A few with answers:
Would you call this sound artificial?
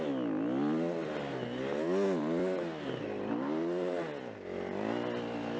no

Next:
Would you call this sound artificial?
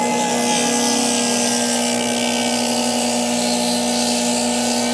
no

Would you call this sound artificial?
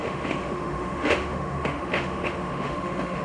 yes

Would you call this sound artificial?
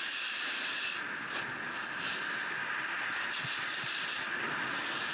yes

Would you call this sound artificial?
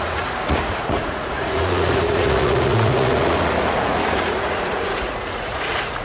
yes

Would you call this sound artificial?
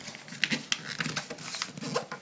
no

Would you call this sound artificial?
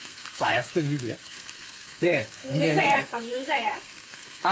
yes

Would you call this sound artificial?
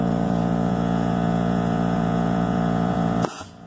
yes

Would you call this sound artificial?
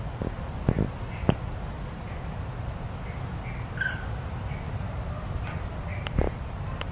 no